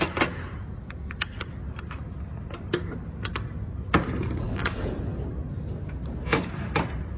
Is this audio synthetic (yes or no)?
no